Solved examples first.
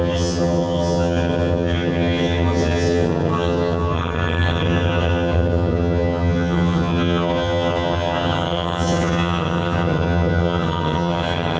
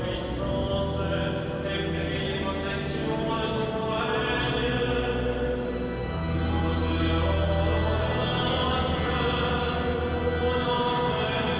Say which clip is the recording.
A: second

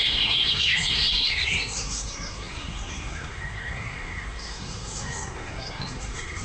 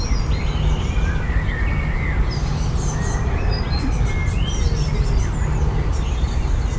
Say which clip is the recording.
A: second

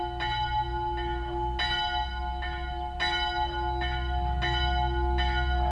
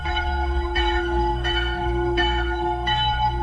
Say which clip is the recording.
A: first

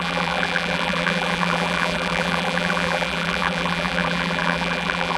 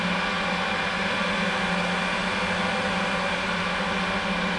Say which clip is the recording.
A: second